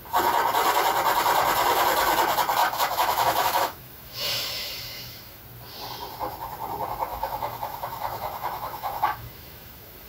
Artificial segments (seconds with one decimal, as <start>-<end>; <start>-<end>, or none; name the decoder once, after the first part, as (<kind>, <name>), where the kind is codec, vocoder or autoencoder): 2.6-5.4 (autoencoder, DAC-VAE); 7.1-10.1